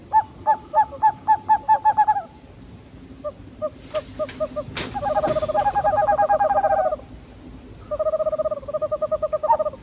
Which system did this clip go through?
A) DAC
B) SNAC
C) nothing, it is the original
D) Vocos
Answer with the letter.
C